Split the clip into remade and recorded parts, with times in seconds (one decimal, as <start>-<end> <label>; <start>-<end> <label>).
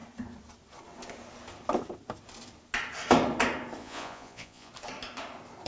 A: 0.0-3.8 recorded; 3.8-4.7 remade; 4.7-5.7 recorded